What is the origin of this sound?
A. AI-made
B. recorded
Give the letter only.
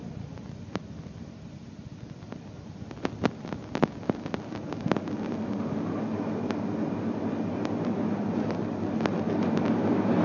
B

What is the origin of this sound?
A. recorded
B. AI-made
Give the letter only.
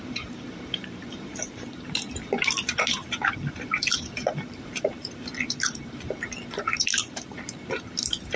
B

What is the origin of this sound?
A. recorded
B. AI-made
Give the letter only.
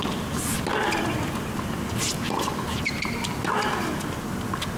A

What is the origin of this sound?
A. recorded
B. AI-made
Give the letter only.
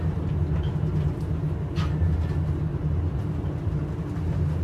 A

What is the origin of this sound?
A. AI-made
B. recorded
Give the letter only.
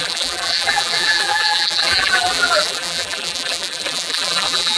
A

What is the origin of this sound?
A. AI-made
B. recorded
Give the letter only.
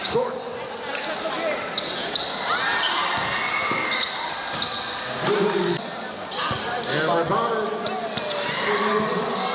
B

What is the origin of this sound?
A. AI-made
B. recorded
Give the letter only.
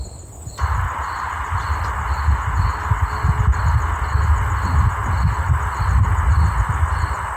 B